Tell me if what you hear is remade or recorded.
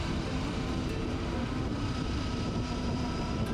remade